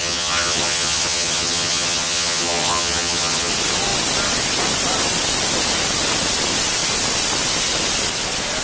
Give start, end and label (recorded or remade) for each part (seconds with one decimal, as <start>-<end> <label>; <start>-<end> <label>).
0.0-3.5 remade; 3.5-8.6 recorded